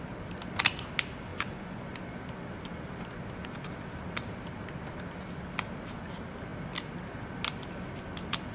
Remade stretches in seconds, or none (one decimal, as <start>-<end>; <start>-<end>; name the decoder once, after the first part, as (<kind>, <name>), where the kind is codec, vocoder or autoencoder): 1.3-1.9 (vocoder, Vocos)